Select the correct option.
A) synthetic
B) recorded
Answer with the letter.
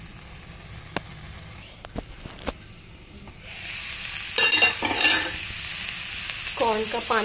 B